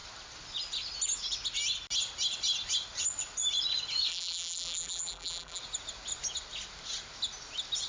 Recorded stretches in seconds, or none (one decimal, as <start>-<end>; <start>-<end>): 0.0-4.1; 5.6-7.9